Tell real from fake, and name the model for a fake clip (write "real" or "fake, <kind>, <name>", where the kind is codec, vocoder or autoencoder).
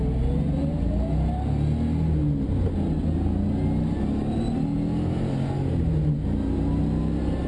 real